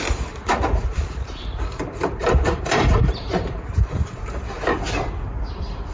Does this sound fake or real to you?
fake